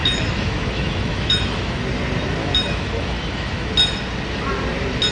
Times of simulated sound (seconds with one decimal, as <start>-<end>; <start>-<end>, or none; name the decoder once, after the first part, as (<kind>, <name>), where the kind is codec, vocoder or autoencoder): 0.0-1.8 (autoencoder, DAC-VAE); 2.4-3.7